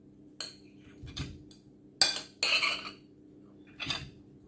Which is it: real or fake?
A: real